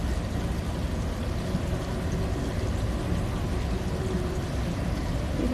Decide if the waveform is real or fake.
real